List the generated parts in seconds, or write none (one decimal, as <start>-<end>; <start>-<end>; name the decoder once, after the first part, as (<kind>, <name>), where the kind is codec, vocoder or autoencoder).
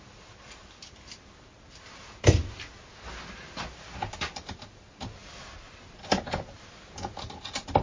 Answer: none